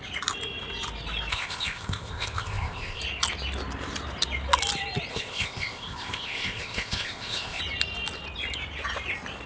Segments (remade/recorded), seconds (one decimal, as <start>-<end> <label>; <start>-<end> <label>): 0.0-1.3 recorded; 1.3-3.0 remade; 3.0-5.1 recorded; 5.1-7.6 remade; 7.6-9.5 recorded